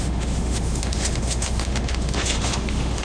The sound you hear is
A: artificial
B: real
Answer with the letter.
A